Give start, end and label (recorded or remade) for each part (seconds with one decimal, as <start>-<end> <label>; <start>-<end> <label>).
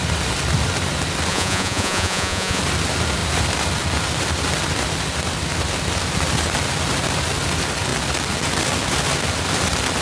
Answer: 0.0-1.3 recorded; 1.3-2.6 remade; 2.6-10.0 recorded